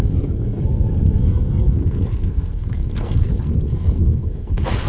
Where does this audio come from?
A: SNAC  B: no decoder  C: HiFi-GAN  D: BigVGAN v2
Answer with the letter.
A